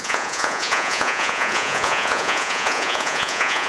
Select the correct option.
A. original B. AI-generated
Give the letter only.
B